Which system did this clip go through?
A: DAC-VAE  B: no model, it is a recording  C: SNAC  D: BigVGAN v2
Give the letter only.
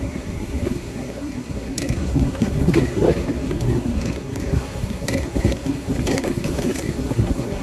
C